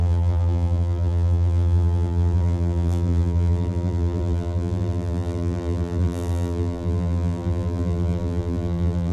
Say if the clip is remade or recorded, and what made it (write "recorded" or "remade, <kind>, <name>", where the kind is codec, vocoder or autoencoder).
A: remade, vocoder, BigVGAN v2